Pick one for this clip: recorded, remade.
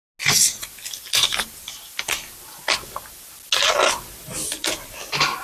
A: recorded